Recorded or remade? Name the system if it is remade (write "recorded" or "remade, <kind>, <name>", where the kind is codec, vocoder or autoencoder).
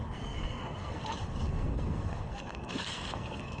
remade, codec, SNAC